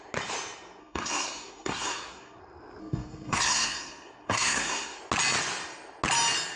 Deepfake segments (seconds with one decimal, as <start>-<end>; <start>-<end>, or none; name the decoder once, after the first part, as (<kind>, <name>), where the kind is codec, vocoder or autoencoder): 0.8-2.4 (codec, SNAC); 2.8-5.0

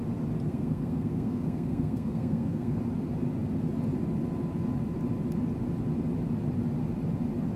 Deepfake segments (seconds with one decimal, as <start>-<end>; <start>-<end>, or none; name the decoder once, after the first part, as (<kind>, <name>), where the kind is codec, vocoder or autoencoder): 0.5-2.8 (codec, SNAC)

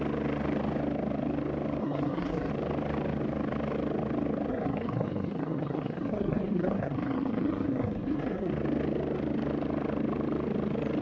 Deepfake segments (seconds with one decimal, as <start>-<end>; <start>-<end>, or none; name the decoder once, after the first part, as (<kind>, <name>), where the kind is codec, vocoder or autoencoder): 1.8-2.5 (codec, SNAC); 4.5-8.5